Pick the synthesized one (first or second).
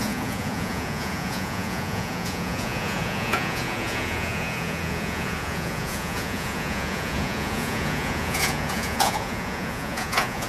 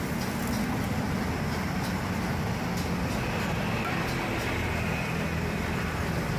first